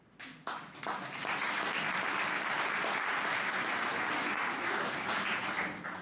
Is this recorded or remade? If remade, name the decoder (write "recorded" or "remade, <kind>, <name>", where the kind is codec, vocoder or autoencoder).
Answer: recorded